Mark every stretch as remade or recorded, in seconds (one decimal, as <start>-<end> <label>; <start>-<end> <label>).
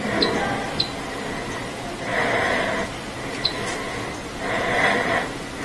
0.0-5.6 recorded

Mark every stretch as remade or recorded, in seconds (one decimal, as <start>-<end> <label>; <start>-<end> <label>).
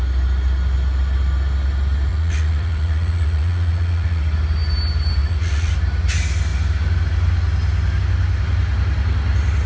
0.0-2.1 recorded; 2.1-4.2 remade; 4.2-5.2 recorded; 5.2-5.7 remade; 5.7-9.7 recorded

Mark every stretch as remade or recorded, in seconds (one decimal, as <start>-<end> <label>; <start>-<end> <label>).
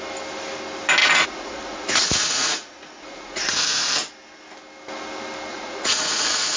0.0-1.0 recorded; 1.0-3.9 remade; 3.9-5.5 recorded; 5.5-6.6 remade